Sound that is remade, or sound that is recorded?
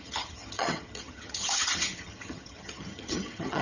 remade